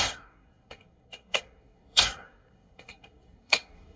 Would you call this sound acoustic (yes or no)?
no